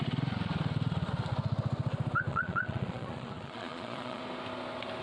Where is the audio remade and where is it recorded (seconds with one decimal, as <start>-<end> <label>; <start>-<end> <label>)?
0.0-2.3 recorded; 2.3-4.2 remade; 4.2-5.0 recorded